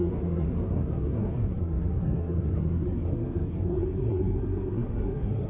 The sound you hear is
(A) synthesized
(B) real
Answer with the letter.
A